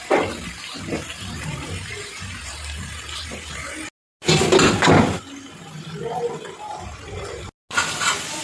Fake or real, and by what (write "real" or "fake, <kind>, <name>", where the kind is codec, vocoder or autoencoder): real